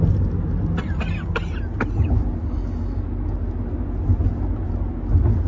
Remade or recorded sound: recorded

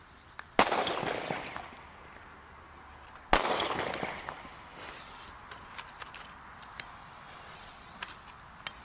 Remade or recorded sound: recorded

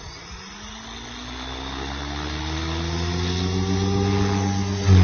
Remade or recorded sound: recorded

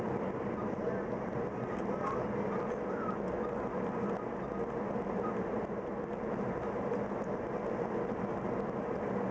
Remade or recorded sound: recorded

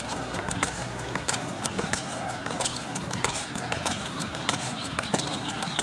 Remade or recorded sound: remade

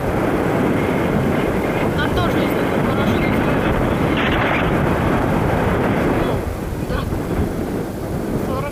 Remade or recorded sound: recorded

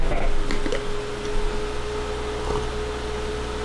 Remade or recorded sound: recorded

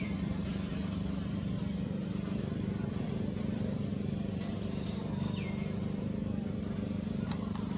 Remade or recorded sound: remade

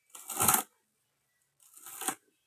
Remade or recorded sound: recorded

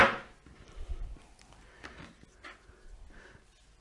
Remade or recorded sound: recorded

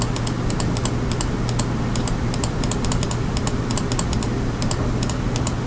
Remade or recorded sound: recorded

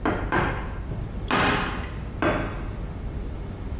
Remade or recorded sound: recorded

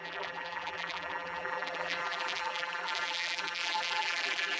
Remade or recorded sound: remade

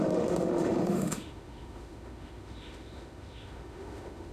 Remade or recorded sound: remade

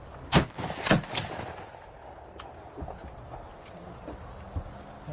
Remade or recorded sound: recorded